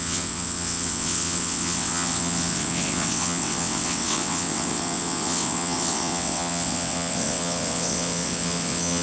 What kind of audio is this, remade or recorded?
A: remade